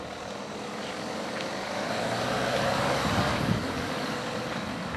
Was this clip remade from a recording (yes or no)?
yes